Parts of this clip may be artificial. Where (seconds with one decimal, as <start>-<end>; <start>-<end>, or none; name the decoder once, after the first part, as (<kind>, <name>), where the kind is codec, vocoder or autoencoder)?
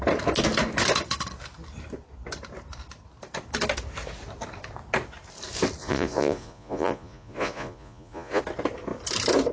5.8-8.4 (vocoder, Vocos)